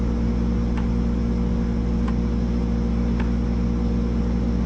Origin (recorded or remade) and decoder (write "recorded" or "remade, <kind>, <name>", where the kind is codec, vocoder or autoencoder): recorded